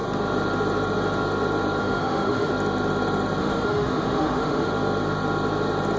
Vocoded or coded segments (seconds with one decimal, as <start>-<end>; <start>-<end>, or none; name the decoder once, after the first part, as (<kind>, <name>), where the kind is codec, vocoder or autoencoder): 1.8-2.5 (autoencoder, DAC-VAE); 3.4-4.7